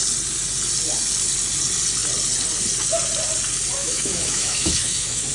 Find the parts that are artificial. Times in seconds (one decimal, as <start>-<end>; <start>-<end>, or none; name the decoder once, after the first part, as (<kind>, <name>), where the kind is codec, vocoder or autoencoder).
3.8-5.3 (autoencoder, DAC-VAE)